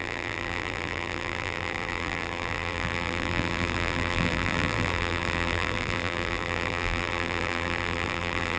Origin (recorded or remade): remade